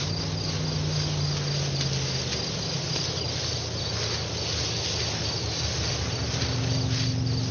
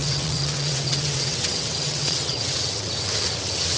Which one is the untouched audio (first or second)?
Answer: first